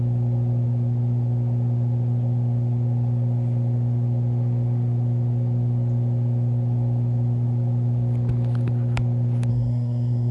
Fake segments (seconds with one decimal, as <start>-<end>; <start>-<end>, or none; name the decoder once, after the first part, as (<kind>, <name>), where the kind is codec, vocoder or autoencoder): 9.5-10.3 (codec, SNAC)

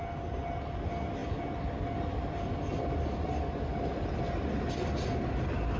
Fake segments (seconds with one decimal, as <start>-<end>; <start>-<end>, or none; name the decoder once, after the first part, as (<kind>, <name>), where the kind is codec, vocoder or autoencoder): none

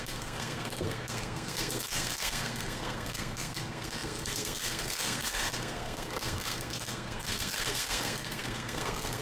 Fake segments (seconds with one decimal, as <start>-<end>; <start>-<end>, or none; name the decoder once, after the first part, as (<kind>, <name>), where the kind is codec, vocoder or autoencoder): 0.0-9.2 (codec, SNAC)

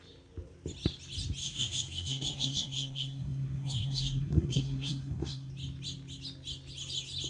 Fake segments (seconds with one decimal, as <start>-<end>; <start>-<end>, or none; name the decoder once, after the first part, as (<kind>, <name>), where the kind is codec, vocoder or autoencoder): 1.4-5.5 (codec, SNAC)